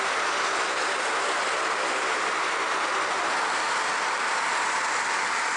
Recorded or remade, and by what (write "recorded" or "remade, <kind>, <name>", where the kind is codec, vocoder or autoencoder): recorded